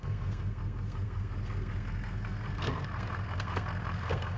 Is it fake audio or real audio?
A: fake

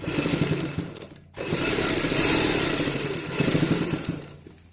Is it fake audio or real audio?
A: real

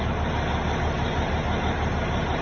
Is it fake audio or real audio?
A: real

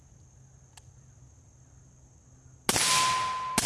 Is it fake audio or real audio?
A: real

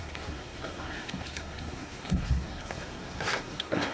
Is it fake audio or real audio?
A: fake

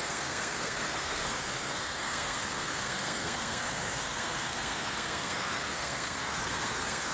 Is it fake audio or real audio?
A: fake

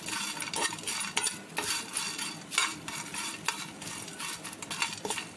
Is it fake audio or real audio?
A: real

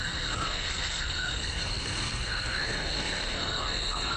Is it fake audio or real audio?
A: fake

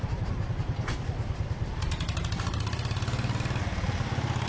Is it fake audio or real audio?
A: real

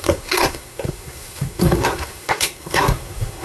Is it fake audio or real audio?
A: fake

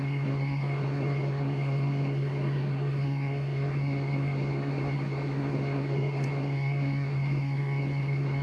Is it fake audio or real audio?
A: fake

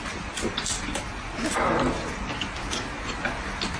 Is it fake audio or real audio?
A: real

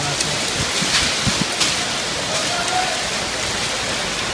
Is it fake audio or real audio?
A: real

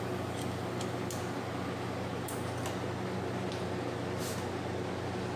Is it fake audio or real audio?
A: real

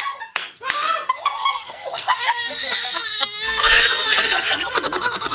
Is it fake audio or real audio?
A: fake